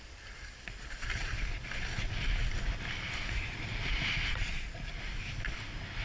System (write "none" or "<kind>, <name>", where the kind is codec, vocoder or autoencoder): none